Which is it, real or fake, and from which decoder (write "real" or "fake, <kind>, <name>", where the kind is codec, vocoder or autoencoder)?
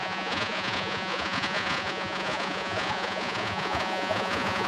fake, vocoder, Vocos